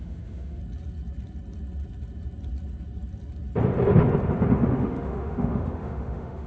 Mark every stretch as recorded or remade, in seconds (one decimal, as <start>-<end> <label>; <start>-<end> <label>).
0.0-0.6 remade; 0.6-4.5 recorded; 4.5-6.5 remade